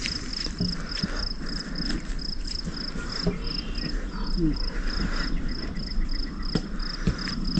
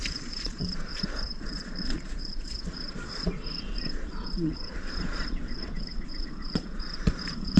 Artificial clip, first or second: second